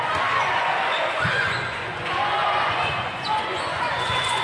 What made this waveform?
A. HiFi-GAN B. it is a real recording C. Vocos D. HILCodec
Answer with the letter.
C